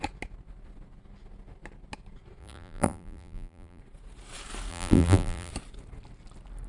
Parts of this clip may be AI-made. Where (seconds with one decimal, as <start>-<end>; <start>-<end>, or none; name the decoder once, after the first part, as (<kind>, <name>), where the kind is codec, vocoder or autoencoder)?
2.4-3.8 (vocoder, BigVGAN v2); 4.7-5.5